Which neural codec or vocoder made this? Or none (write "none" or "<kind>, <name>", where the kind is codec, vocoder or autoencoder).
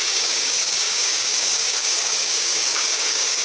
codec, DAC